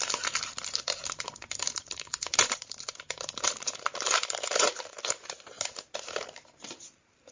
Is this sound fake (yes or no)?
yes